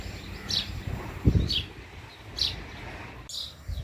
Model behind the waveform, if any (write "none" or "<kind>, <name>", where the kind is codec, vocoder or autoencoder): none